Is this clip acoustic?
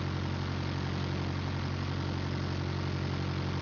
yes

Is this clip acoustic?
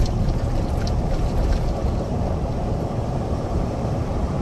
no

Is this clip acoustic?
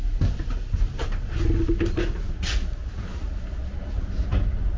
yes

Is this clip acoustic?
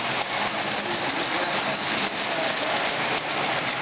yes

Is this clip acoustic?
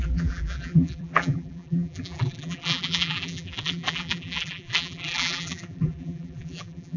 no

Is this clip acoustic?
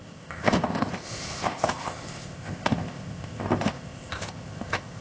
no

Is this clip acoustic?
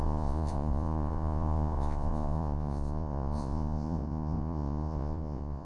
no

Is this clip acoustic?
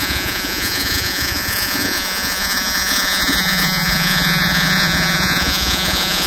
no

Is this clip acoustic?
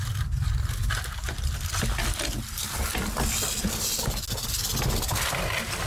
yes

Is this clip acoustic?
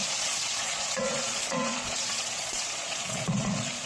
no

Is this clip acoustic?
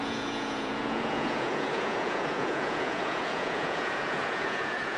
no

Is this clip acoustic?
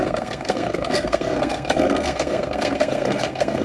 no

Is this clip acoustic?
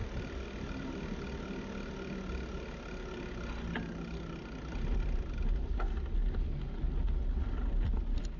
yes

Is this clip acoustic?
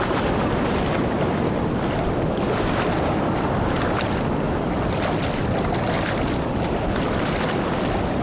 yes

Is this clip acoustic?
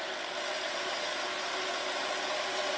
yes